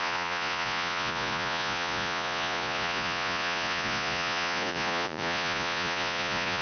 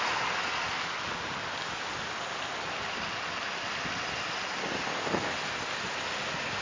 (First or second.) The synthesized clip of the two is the first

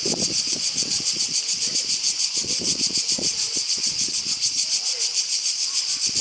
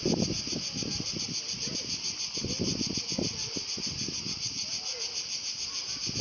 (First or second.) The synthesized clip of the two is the first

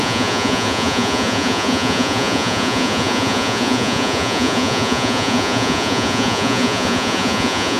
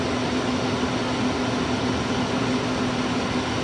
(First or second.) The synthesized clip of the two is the first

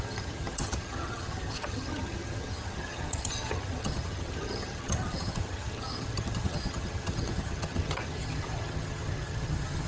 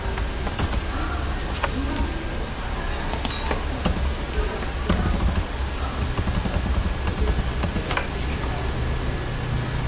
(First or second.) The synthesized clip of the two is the first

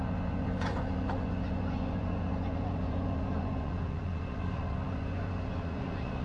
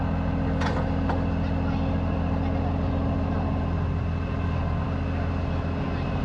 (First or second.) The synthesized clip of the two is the first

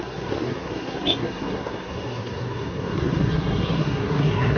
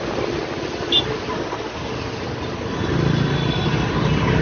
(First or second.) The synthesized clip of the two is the first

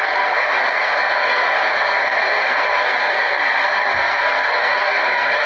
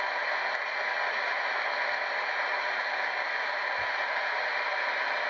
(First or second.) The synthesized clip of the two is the first